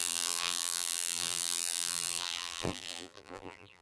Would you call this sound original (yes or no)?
no